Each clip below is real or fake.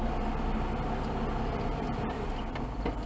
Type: real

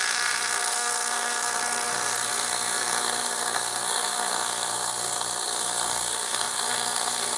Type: fake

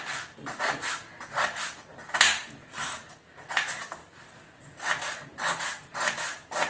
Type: real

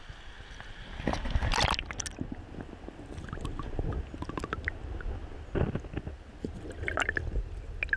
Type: real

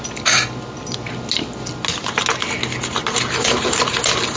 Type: real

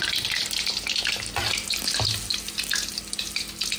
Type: real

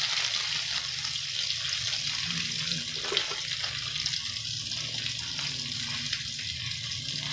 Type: real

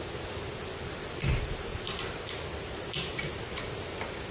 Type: real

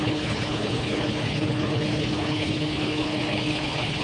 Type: fake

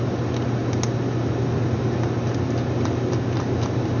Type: real